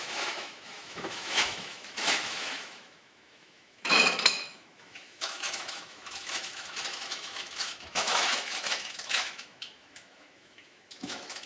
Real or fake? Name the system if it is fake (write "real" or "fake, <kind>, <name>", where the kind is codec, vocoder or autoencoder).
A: fake, autoencoder, DAC-VAE